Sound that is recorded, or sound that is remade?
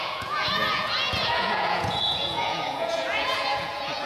remade